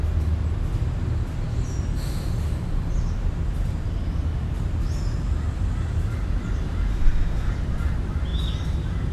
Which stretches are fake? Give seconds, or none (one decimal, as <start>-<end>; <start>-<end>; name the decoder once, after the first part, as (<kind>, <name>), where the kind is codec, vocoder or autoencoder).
6.9-7.5 (autoencoder, DAC-VAE)